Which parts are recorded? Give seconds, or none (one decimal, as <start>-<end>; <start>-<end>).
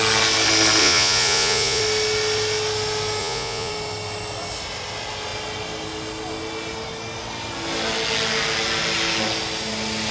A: 0.0-0.8; 1.8-3.2; 3.7-10.1